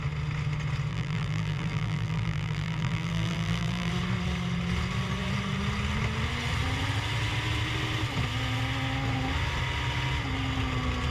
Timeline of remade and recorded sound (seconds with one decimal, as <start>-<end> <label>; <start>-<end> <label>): 0.0-0.9 recorded; 0.9-3.9 remade; 3.9-11.1 recorded